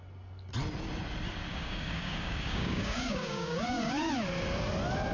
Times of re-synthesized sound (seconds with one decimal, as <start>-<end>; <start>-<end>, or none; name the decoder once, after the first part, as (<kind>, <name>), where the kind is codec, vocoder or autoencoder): 1.5-4.1 (codec, DAC)